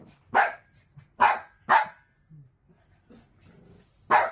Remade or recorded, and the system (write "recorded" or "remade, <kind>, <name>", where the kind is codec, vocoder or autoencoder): recorded